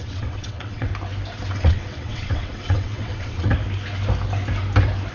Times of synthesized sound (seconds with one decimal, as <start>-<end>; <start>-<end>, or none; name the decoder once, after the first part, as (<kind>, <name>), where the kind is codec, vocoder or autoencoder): 0.0-0.9 (vocoder, WaveNeXt); 1.5-3.5